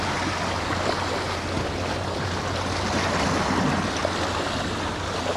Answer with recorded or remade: recorded